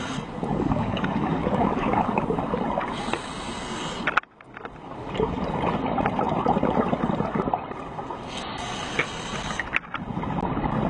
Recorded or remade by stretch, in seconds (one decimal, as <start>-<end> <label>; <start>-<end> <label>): 0.0-0.5 recorded; 0.5-2.4 remade; 2.4-10.9 recorded